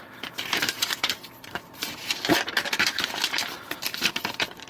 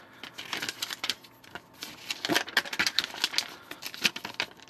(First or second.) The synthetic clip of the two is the first